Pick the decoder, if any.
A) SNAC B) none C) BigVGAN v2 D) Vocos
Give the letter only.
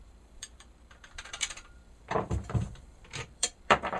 C